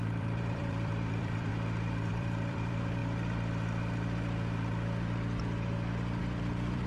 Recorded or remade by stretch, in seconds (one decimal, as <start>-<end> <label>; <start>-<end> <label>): 0.0-1.5 remade; 1.5-2.1 recorded; 2.1-3.0 remade; 3.0-6.2 recorded; 6.2-6.9 remade

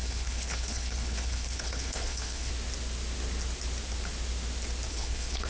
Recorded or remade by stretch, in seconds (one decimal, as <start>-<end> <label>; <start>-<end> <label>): 0.0-2.5 remade; 2.5-4.9 recorded; 4.9-5.5 remade

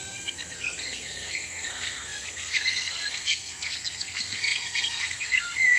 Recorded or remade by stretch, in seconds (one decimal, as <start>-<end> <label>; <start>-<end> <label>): 0.0-5.8 remade

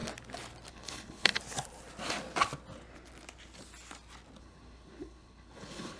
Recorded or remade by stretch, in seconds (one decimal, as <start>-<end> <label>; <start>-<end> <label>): 0.0-0.7 recorded; 0.7-1.3 remade; 1.3-4.4 recorded; 4.4-6.0 remade

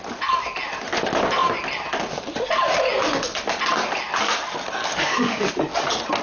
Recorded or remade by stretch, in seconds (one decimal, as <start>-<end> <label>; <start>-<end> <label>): 0.0-4.8 recorded; 4.8-5.5 remade; 5.5-6.2 recorded

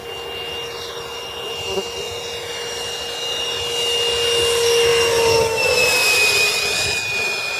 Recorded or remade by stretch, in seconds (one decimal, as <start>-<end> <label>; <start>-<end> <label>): 0.0-7.6 recorded

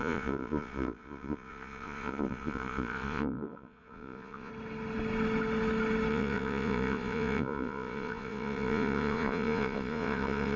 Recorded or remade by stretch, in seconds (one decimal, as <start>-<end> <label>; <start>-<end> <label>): 0.0-4.5 remade; 4.5-6.1 recorded; 6.1-10.6 remade

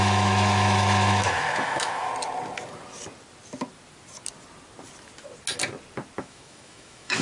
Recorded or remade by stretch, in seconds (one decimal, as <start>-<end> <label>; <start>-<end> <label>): 0.0-2.1 remade; 2.1-6.2 recorded; 6.2-7.2 remade